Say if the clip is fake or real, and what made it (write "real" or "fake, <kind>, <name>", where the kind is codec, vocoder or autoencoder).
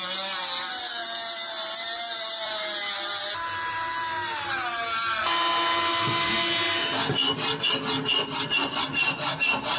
real